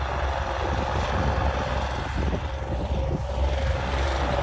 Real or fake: real